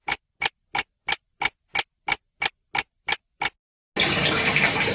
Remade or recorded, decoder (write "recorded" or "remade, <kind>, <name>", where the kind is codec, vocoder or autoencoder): recorded